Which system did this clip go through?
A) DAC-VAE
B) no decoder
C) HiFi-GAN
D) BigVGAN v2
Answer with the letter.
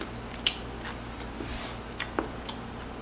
B